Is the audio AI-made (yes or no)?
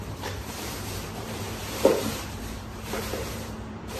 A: yes